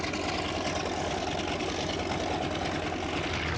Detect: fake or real real